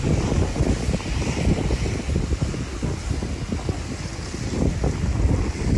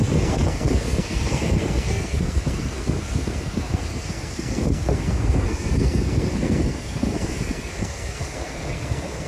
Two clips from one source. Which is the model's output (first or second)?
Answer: second